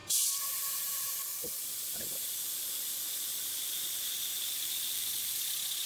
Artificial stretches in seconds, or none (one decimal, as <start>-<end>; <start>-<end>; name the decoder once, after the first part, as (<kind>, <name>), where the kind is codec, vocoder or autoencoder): 0.0-1.1 (vocoder, BigVGAN v2); 3.3-4.3